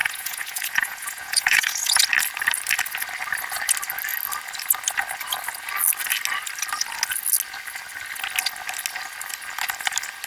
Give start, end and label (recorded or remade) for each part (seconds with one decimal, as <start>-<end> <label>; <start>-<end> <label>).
0.0-2.0 remade; 2.0-10.3 recorded